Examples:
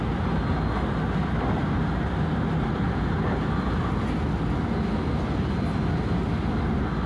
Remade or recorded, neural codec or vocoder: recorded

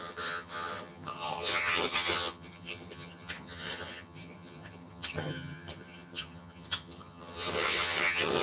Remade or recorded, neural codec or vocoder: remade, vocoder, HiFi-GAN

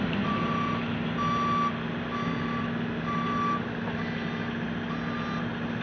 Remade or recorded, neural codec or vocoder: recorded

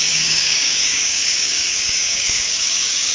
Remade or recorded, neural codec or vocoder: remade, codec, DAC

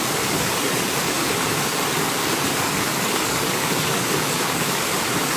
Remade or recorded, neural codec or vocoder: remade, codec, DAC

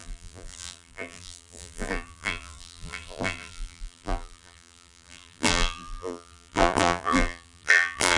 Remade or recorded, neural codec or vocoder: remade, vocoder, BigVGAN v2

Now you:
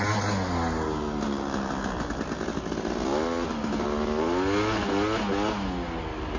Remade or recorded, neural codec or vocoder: recorded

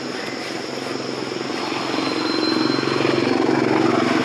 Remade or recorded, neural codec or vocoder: recorded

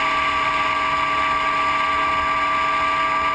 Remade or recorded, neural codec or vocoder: recorded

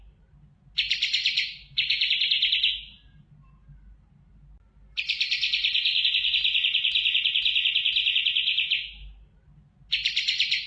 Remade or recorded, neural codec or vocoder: recorded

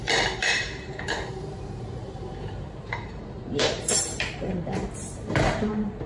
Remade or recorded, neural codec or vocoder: remade, vocoder, BigVGAN v2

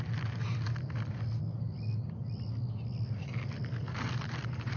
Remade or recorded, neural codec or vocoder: recorded